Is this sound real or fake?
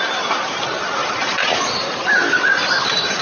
fake